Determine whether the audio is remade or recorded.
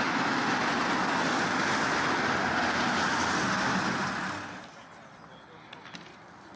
recorded